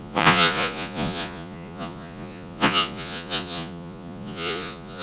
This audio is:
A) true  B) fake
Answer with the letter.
B